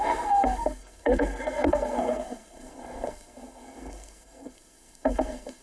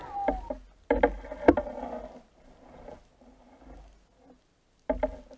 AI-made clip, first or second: first